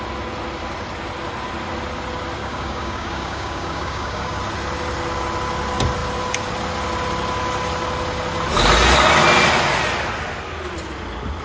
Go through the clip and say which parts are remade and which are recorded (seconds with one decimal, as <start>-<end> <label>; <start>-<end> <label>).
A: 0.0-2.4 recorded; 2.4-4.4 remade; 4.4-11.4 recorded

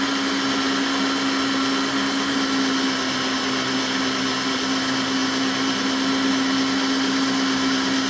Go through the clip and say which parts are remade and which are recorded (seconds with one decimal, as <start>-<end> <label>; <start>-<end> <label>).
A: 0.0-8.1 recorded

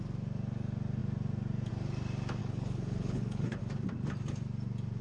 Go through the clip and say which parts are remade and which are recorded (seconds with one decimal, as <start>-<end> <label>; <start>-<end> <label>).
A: 0.0-2.4 recorded; 2.4-3.6 remade; 3.6-5.0 recorded